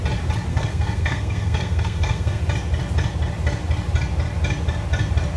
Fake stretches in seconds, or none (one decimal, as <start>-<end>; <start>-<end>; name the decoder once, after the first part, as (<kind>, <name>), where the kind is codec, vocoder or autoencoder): 0.5-2.4 (codec, SNAC)

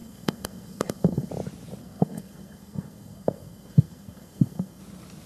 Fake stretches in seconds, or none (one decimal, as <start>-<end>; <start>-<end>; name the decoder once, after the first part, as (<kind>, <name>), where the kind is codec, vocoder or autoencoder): 0.0-1.3 (codec, SNAC); 1.8-4.8

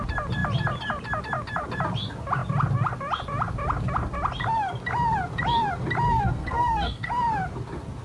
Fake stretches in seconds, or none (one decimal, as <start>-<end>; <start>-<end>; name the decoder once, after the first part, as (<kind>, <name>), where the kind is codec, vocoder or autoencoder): 6.1-7.1 (codec, SNAC)

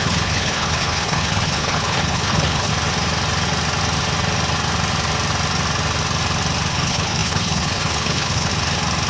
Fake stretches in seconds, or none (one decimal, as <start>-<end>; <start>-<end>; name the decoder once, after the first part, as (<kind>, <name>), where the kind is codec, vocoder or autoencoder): 0.0-2.7 (codec, HILCodec); 6.7-8.5

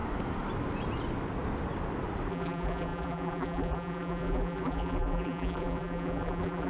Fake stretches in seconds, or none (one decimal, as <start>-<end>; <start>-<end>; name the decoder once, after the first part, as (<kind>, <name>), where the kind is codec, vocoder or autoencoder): 2.3-6.7 (vocoder, BigVGAN v2)

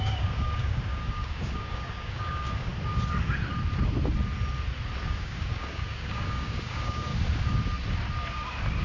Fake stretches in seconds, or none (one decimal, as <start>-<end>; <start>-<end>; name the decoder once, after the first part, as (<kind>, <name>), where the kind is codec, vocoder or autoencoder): 0.0-2.7 (codec, DAC); 5.0-7.1

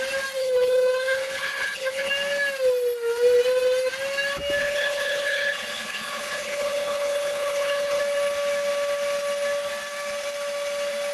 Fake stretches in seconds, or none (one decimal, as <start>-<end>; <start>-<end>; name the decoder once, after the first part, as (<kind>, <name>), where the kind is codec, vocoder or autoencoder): 0.4-2.1 (codec, HILCodec); 4.6-8.0

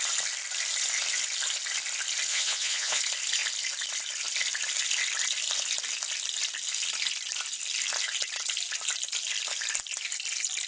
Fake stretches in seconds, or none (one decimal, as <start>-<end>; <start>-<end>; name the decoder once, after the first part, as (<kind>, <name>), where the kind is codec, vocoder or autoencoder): 2.3-3.0 (vocoder, Vocos)